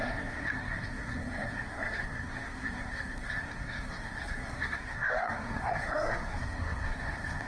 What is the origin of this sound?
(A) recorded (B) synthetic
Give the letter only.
B